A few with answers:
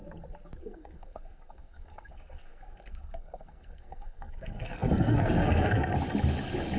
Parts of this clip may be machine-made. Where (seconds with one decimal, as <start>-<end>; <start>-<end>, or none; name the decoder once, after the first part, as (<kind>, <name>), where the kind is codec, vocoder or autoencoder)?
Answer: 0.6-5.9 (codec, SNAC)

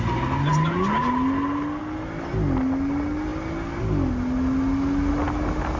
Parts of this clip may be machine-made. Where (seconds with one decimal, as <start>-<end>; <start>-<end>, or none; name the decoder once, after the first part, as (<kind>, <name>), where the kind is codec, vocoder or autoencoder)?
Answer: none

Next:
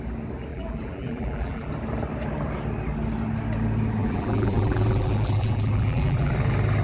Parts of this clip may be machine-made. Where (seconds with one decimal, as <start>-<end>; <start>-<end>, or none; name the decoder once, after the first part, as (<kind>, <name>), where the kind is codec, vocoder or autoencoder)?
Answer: 0.5-1.7 (vocoder, BigVGAN v2); 4.0-6.3

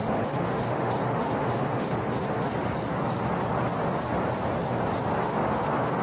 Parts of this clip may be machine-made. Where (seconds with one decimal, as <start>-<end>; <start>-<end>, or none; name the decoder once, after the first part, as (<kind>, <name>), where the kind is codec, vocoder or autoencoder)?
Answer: 0.0-2.5 (autoencoder, DAC-VAE); 5.2-6.0